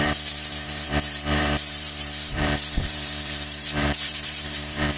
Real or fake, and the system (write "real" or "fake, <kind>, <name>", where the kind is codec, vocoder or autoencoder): fake, vocoder, BigVGAN v2